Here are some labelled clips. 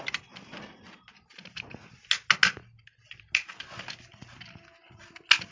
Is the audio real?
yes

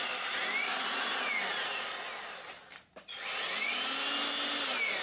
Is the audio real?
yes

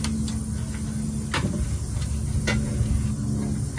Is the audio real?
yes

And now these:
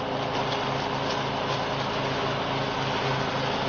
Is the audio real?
yes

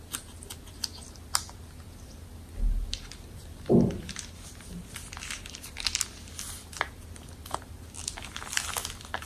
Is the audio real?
yes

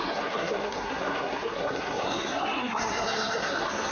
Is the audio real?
no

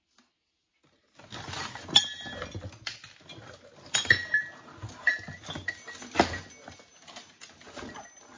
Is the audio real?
yes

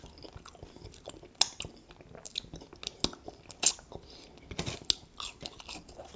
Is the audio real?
yes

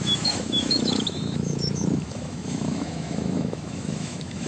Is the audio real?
no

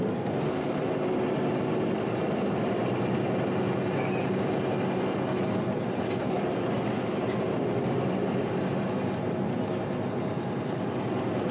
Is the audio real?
yes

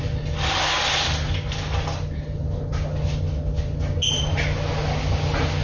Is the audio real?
yes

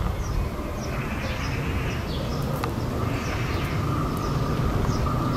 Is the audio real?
yes